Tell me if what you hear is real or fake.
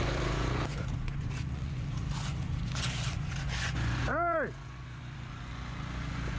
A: fake